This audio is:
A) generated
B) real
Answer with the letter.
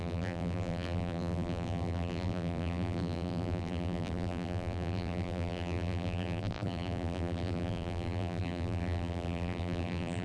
A